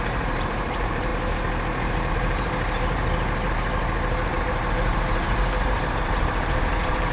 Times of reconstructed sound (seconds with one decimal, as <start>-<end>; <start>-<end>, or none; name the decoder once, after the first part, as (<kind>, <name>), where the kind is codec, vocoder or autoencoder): 0.0-1.1 (vocoder, BigVGAN v2); 2.1-3.0; 4.3-7.1